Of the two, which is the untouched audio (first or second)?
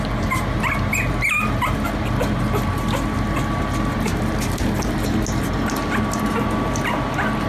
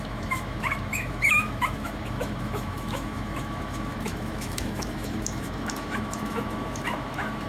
first